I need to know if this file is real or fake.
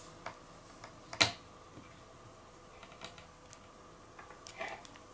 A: real